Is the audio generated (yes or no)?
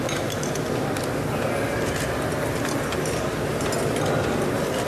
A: no